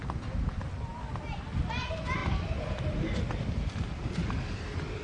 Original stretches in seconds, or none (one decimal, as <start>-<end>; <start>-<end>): 0.0-2.2; 4.1-5.0